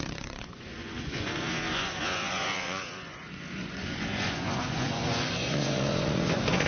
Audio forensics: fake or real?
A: fake